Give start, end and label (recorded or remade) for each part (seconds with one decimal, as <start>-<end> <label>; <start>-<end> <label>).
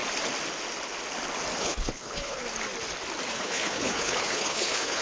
0.0-1.6 recorded; 1.6-2.4 remade; 2.4-3.3 recorded; 3.3-5.0 remade